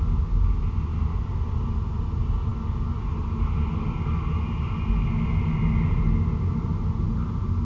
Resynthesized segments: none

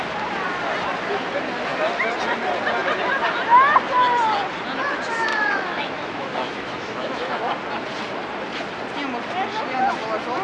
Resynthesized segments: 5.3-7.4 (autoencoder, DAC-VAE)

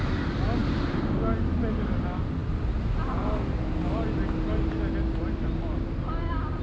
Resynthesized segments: none

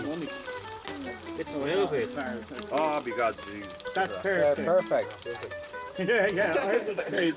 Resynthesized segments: 6.8-7.4 (codec, SNAC)

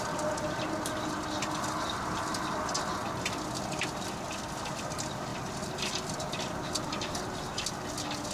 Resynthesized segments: 5.3-6.3 (vocoder, BigVGAN v2)